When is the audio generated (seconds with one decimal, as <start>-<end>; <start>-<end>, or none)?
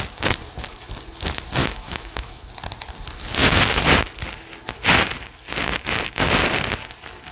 1.6-2.5; 5.7-6.3